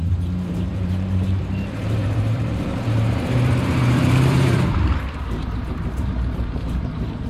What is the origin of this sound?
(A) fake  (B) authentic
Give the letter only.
A